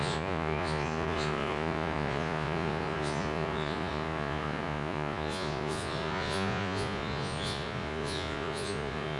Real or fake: fake